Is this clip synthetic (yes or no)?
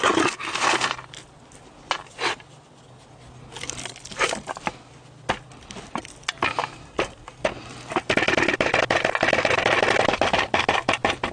no